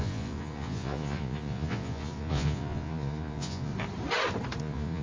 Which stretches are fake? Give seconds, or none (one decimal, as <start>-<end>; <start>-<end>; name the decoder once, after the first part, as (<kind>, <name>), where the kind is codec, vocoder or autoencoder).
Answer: 0.0-3.7 (vocoder, Vocos); 4.6-5.0